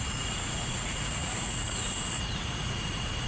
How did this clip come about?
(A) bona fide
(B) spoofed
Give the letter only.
B